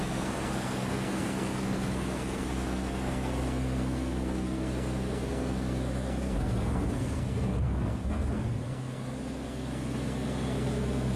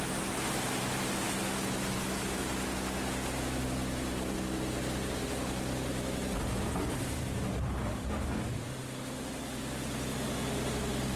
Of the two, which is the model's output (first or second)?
first